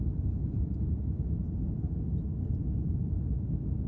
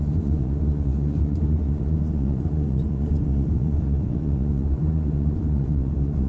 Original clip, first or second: first